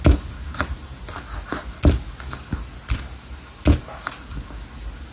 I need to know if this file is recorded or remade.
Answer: recorded